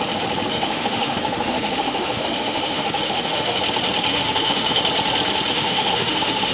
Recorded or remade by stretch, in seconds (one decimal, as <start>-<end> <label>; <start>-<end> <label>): 0.0-0.5 recorded; 0.5-3.6 remade; 3.6-4.1 recorded; 4.1-4.8 remade; 4.8-5.5 recorded; 5.5-6.5 remade